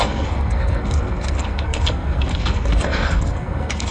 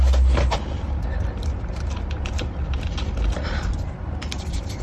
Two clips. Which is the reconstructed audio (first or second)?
first